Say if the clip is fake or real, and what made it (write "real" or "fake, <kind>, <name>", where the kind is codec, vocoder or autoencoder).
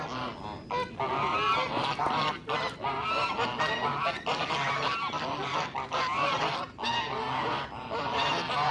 real